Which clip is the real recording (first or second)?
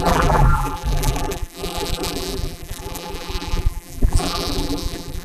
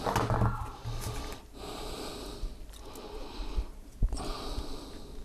second